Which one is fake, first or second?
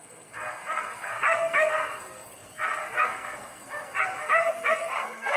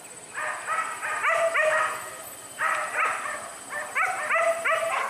first